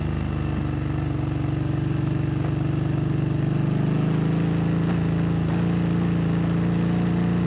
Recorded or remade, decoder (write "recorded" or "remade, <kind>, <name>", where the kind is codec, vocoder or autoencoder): recorded